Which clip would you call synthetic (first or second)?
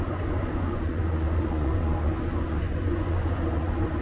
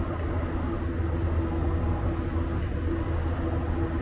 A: first